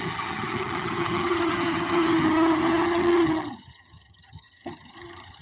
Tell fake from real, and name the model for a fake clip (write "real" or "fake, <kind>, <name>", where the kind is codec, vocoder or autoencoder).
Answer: fake, vocoder, HiFi-GAN